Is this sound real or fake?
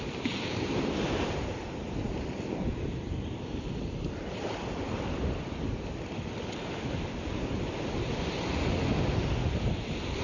real